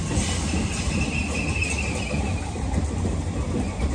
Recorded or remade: recorded